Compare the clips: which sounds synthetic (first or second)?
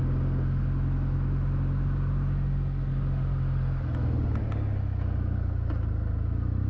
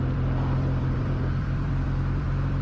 second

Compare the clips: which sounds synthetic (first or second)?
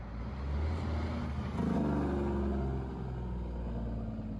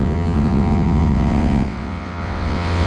second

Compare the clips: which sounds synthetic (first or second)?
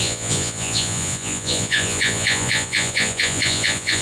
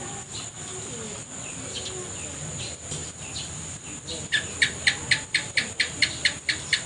first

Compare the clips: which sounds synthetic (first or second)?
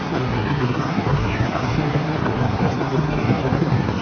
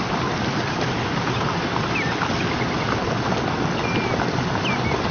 first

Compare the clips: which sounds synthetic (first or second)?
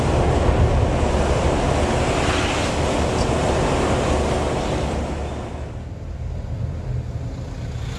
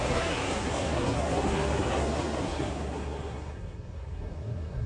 second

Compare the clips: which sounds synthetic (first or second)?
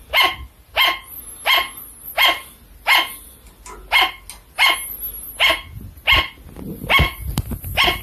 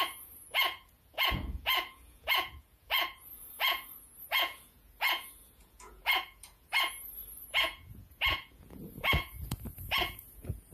second